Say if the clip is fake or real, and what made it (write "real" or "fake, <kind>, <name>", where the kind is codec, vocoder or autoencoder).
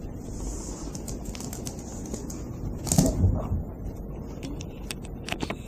real